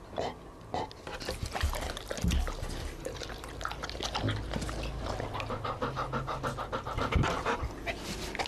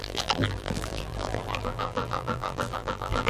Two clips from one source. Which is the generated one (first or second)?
second